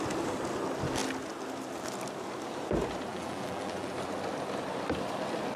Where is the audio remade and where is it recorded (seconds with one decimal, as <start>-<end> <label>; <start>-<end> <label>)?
0.0-3.1 recorded; 3.1-3.9 remade; 3.9-5.6 recorded